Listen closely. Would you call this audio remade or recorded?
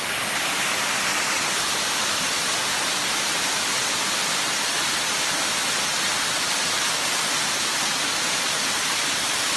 recorded